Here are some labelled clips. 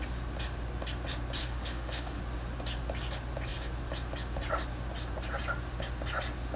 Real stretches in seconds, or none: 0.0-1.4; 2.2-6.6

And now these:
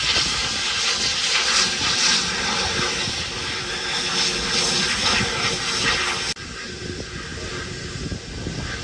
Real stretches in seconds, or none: 0.0-8.8